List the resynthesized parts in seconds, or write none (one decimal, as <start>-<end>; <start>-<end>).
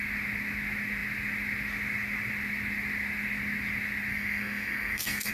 4.1-5.3